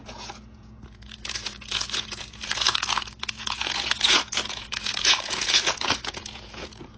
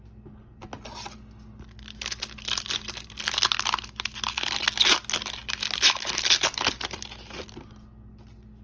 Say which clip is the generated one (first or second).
first